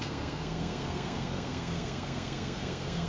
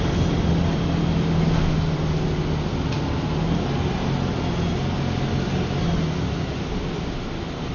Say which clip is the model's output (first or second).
first